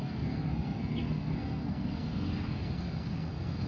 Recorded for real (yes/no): no